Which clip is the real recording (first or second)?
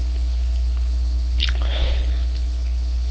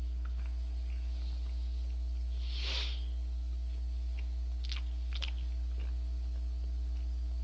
second